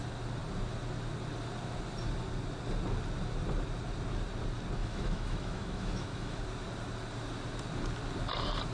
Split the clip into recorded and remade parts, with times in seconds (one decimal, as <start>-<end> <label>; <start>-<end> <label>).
0.0-4.8 recorded; 4.8-6.4 remade; 6.4-8.7 recorded